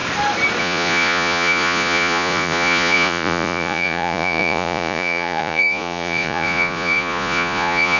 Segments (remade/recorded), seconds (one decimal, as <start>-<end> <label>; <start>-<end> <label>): 0.0-0.6 recorded; 0.6-8.0 remade